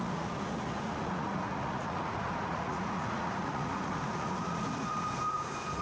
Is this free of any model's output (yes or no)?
no